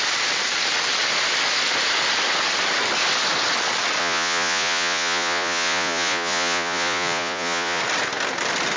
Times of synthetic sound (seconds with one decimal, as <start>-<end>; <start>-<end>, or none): 4.0-7.8